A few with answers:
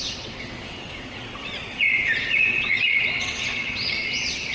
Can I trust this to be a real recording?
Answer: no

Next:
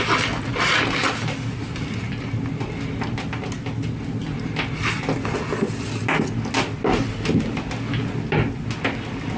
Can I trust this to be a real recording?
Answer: yes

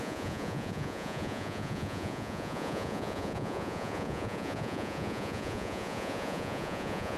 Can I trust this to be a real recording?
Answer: no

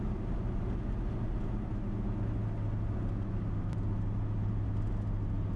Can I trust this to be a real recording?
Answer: yes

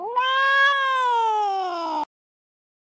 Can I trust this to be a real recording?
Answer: yes